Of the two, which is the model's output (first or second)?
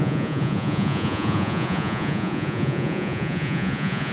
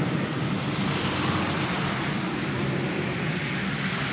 first